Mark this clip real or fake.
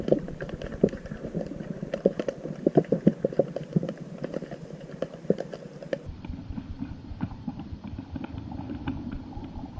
fake